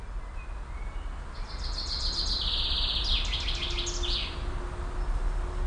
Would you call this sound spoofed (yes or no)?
no